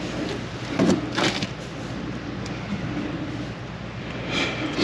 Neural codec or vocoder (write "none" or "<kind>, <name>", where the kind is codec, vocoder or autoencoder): none